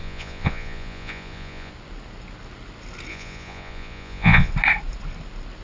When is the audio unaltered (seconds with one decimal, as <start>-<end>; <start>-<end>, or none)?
1.7-3.1; 4.5-5.6